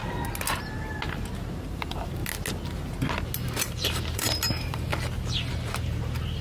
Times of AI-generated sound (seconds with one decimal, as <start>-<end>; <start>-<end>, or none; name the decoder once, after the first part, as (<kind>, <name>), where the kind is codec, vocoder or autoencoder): 1.6-2.2 (vocoder, BigVGAN v2); 3.6-4.9; 5.5-6.4